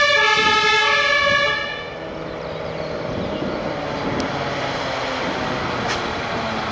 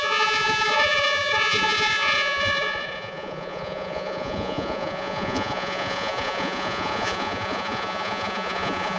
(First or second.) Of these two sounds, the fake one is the second